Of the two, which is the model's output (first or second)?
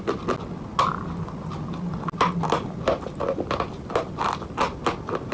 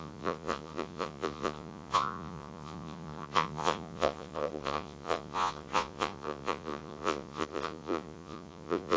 second